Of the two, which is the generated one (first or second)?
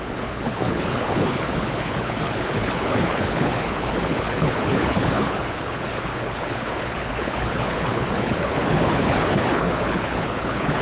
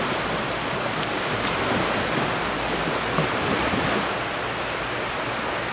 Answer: first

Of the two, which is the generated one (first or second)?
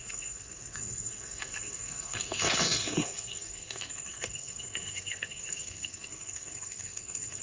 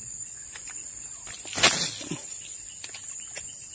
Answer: first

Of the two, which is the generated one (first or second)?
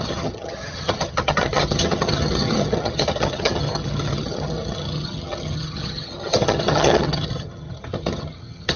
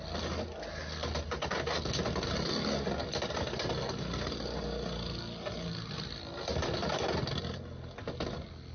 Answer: first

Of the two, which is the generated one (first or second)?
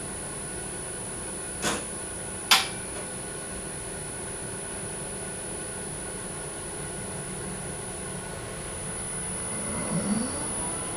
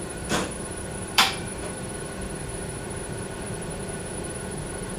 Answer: second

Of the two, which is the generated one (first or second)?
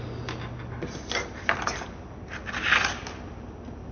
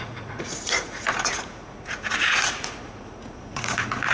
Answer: second